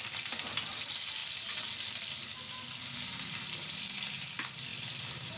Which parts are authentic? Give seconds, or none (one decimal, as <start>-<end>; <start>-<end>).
0.0-5.4